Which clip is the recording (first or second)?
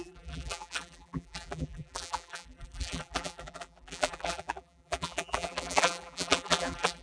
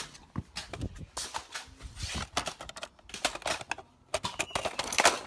second